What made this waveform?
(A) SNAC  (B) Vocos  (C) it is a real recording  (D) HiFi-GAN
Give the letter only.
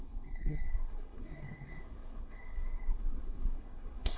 A